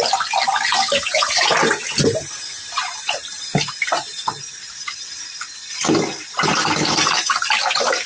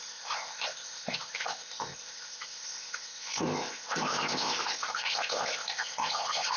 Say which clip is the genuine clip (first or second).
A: first